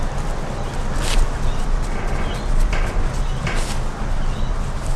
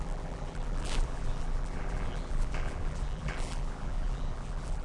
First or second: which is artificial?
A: second